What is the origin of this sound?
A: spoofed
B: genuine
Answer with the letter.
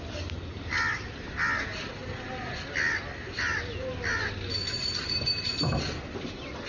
B